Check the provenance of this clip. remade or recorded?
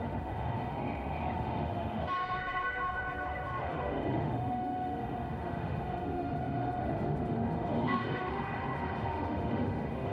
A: remade